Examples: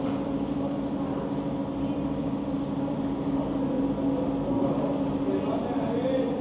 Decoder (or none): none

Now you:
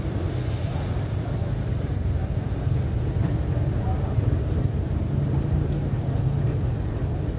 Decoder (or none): none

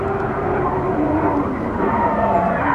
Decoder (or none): none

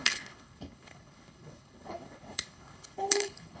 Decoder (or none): codec, HILCodec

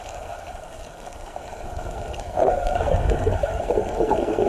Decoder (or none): codec, SNAC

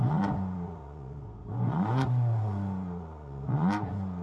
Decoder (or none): vocoder, Vocos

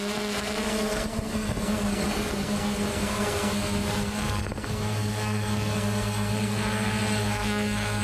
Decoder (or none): codec, SNAC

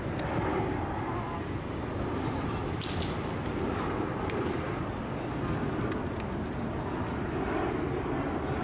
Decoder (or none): none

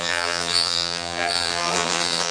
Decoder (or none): vocoder, BigVGAN v2